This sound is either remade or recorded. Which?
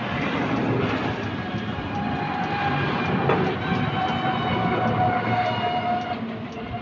recorded